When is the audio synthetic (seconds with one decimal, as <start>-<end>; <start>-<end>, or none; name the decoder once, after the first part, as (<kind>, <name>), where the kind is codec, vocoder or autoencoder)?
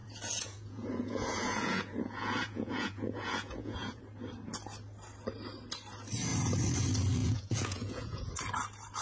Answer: 0.0-4.0 (vocoder, Vocos); 7.2-8.3